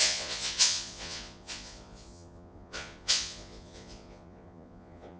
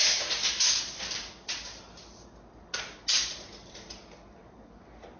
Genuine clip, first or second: second